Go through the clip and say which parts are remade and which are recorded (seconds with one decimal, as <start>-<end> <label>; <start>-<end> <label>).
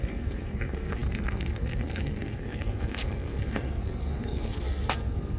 0.0-5.4 remade